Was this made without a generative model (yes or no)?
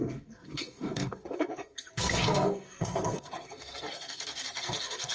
no